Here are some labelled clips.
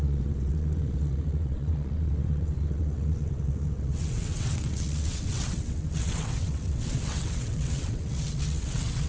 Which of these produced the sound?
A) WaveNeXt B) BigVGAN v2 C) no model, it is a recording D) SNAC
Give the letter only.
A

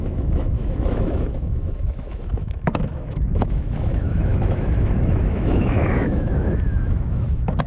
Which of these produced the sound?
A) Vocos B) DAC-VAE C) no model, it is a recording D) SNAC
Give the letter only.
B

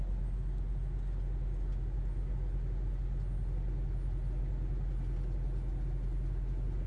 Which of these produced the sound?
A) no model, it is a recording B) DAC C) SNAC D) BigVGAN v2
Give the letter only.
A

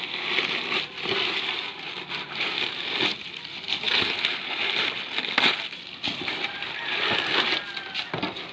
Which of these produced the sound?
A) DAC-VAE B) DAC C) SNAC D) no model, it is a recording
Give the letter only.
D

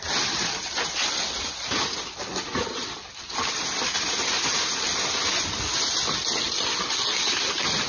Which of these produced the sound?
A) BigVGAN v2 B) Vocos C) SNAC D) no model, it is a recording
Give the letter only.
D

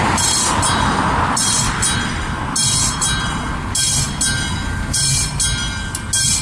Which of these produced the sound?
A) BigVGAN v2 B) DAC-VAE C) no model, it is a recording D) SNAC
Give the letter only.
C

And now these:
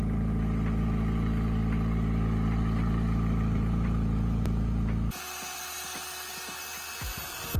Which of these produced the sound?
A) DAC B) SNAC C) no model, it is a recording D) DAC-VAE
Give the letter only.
C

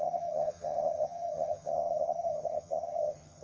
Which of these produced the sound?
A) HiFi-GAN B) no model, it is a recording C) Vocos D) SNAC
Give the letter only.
A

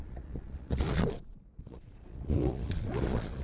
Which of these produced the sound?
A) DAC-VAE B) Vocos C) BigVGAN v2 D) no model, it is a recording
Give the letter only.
B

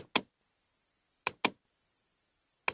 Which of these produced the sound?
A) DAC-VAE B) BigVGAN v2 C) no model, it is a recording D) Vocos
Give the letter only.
C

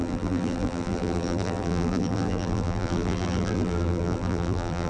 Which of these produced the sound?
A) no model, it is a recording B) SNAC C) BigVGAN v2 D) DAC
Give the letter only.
C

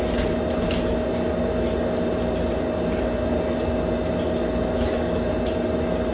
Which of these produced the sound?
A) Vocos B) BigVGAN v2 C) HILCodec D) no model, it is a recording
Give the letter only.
D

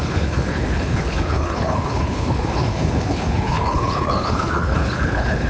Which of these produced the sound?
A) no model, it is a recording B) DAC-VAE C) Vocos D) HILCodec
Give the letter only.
D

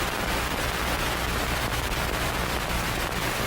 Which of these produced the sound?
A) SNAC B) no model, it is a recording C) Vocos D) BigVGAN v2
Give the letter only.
D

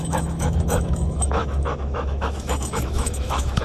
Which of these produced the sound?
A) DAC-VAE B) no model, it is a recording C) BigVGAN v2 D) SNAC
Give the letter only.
A